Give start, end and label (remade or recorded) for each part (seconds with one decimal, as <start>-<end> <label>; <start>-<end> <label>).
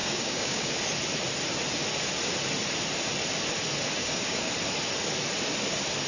0.0-0.7 remade; 0.7-4.0 recorded; 4.0-4.5 remade; 4.5-6.1 recorded